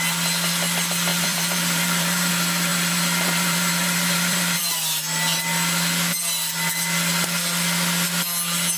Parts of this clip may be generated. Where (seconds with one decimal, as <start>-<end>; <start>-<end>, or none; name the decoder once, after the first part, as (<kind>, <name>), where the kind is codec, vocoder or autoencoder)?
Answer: 1.1-2.3 (vocoder, BigVGAN v2); 2.7-4.6